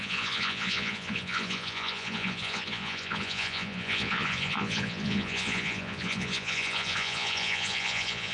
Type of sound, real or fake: fake